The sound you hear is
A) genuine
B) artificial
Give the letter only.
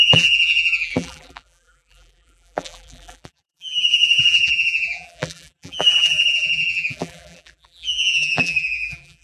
B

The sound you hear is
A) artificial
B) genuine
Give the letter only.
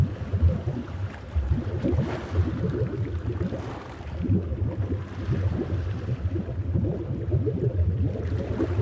B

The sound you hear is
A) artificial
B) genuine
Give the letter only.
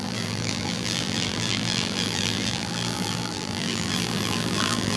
A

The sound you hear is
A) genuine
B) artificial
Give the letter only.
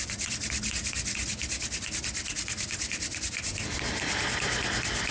B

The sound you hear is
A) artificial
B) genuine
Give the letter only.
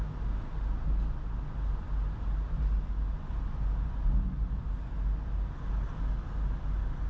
B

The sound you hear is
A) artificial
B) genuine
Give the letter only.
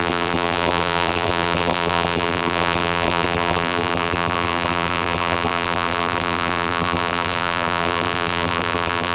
A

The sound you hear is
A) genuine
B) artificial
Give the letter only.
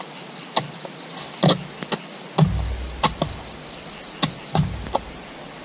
A